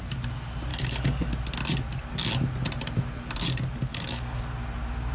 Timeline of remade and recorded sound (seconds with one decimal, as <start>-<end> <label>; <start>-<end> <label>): 0.0-0.7 recorded; 0.7-1.3 remade; 1.3-3.9 recorded; 3.9-4.4 remade; 4.4-5.1 recorded

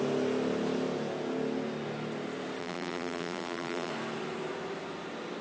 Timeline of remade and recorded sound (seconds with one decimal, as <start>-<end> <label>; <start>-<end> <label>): 0.0-2.6 recorded; 2.6-3.9 remade; 3.9-5.4 recorded

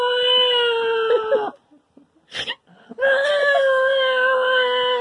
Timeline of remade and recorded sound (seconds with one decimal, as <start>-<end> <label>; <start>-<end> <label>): 0.0-2.7 recorded; 2.7-3.3 remade; 3.3-5.0 recorded

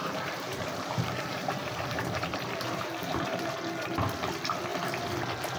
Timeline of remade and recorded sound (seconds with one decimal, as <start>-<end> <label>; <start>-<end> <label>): 0.0-3.4 remade; 3.4-5.6 recorded

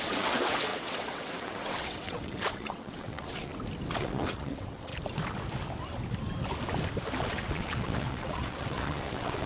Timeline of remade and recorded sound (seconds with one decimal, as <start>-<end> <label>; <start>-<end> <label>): 0.0-3.5 remade; 3.5-4.0 recorded; 4.0-4.9 remade; 4.9-7.2 recorded; 7.2-9.5 remade